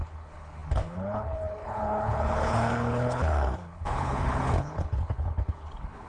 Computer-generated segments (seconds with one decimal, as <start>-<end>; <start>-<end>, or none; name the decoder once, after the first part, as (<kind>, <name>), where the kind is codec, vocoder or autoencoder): 0.0-6.1 (codec, HILCodec)